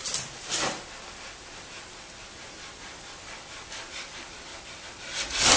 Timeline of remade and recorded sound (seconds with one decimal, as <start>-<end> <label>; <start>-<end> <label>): 0.0-5.6 recorded